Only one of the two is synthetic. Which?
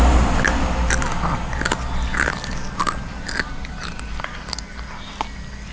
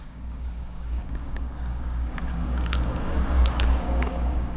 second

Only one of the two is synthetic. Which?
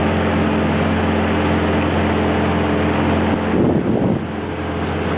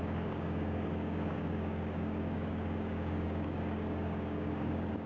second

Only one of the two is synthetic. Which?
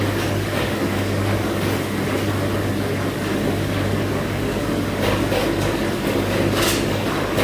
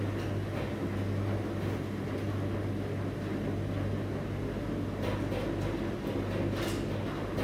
first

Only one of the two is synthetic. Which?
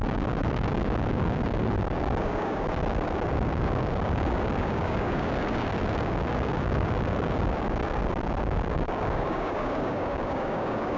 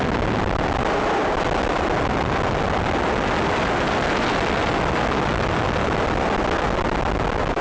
first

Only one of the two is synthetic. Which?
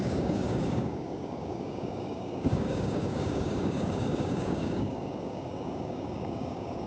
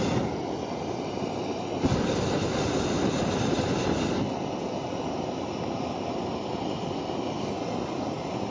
first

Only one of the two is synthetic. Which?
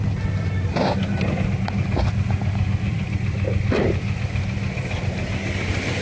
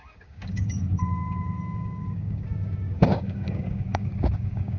second